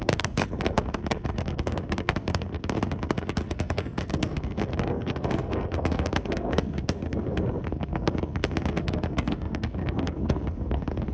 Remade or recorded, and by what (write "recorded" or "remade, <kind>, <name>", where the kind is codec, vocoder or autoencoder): remade, codec, SNAC